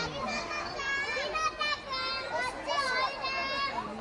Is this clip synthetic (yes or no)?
no